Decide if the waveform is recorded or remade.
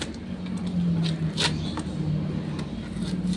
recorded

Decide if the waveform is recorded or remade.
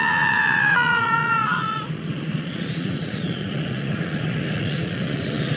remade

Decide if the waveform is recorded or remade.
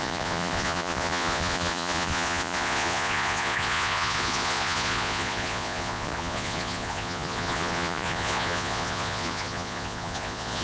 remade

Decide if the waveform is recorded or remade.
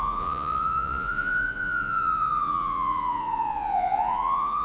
remade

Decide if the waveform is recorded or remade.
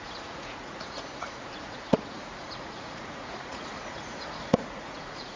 remade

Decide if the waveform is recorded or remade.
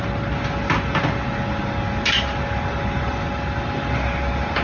recorded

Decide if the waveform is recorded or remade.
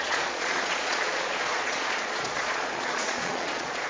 remade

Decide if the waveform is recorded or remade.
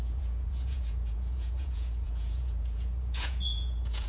remade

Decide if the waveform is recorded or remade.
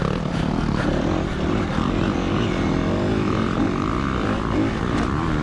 recorded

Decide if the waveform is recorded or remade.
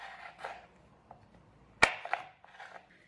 recorded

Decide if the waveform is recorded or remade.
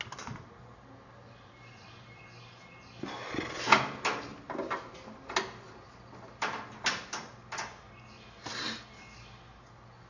recorded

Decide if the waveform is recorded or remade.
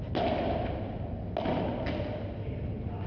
recorded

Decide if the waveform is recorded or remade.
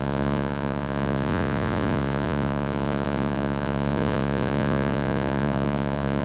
remade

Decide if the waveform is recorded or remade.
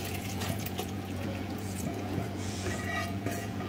remade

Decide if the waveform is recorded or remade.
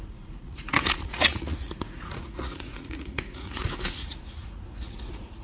remade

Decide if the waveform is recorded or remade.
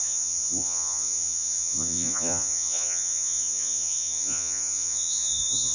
remade